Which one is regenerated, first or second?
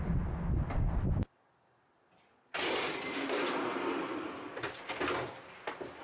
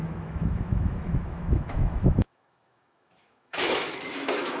second